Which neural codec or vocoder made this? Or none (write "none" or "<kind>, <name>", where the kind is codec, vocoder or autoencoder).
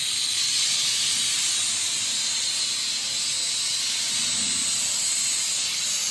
none